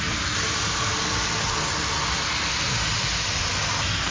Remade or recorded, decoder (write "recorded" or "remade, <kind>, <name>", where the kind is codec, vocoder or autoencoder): recorded